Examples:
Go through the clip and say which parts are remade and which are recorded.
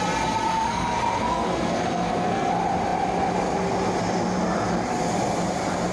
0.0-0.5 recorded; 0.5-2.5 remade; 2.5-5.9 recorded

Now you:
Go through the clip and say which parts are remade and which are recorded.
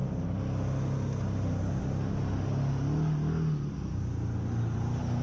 0.0-5.2 recorded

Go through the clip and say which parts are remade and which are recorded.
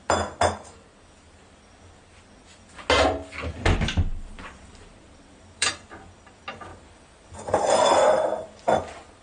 0.0-4.1 recorded; 4.1-5.7 remade; 5.7-6.7 recorded; 6.7-7.7 remade; 7.7-9.2 recorded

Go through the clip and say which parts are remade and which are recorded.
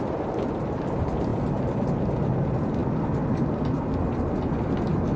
0.0-5.2 recorded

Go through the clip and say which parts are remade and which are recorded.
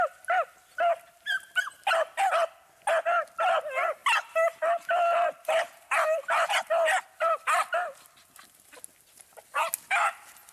0.0-10.5 recorded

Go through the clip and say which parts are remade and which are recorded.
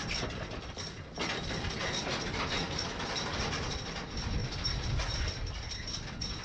0.0-6.4 recorded